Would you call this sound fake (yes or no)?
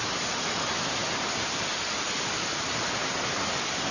no